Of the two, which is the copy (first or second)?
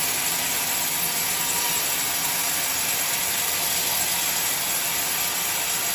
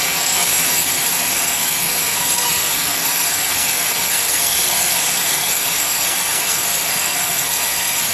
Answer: second